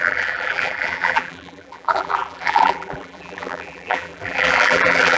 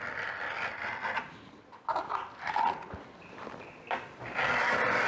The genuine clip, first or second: second